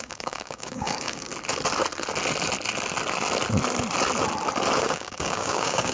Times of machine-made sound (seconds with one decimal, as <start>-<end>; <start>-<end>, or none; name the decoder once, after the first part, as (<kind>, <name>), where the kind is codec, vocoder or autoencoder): 0.0-1.3 (codec, DAC); 4.8-5.9